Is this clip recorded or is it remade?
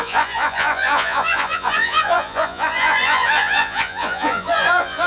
remade